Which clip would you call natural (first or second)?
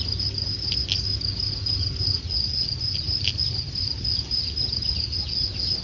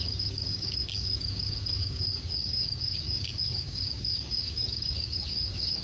first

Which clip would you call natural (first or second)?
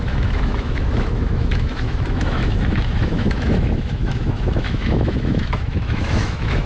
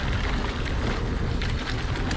second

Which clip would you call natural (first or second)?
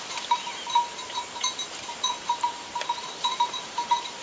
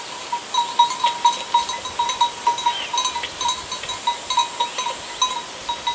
second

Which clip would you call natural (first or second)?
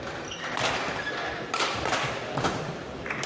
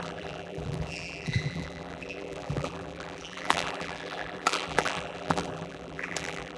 first